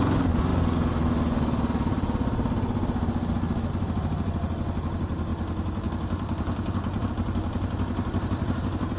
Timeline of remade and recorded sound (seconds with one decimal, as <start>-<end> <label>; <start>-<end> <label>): 0.0-9.0 recorded